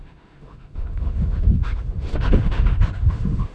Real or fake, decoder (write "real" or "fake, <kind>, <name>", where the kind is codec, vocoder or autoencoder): fake, autoencoder, DAC-VAE